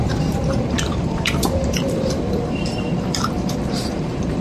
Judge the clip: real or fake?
fake